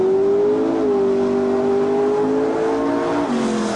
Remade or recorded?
recorded